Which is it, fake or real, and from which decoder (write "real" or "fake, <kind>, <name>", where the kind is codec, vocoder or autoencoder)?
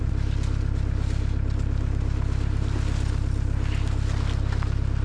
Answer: real